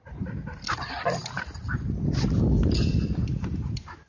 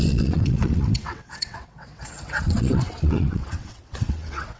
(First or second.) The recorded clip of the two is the first